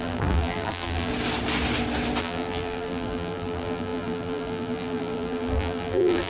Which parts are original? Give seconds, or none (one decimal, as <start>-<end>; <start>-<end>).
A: 1.1-2.2